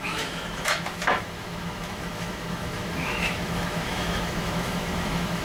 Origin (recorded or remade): remade